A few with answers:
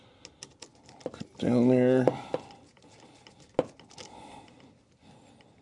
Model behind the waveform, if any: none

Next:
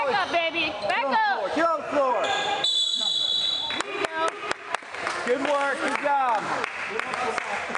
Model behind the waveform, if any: none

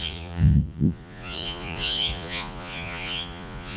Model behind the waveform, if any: vocoder, Vocos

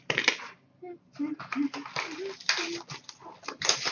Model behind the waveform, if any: none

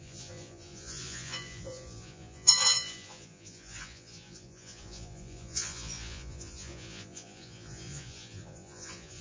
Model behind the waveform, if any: vocoder, Vocos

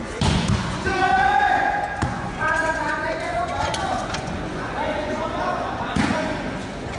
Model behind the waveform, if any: vocoder, Vocos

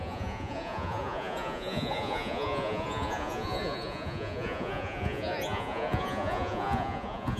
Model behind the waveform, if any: vocoder, Vocos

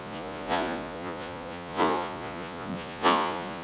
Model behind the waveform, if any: vocoder, Vocos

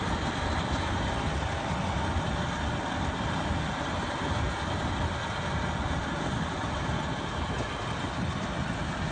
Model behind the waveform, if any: none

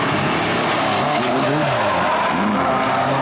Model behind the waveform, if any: none